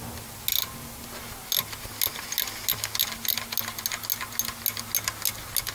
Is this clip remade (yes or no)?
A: no